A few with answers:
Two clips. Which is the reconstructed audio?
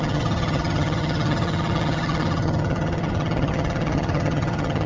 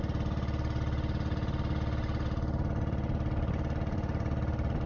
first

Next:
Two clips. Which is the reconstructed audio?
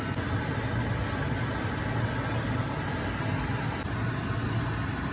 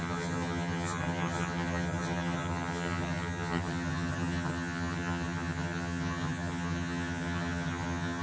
second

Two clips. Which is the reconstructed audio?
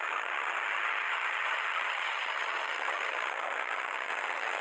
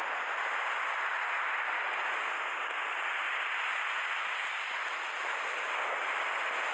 first